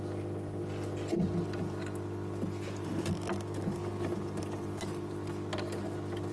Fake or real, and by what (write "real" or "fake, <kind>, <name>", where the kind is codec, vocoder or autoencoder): real